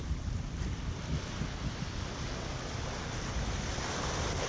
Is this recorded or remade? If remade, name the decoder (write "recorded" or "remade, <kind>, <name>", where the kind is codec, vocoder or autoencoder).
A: recorded